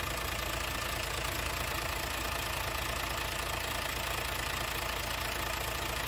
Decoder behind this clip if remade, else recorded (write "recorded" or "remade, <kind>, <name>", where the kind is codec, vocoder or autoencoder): recorded